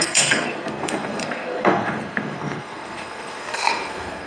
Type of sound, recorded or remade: remade